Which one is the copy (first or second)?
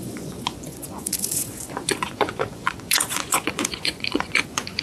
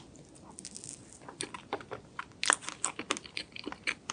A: first